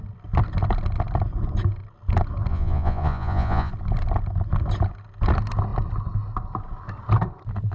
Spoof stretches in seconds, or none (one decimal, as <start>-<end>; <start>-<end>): 2.5-3.7